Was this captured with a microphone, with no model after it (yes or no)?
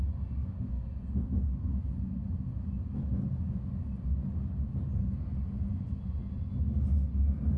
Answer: yes